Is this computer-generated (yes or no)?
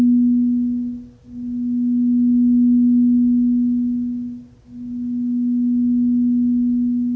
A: no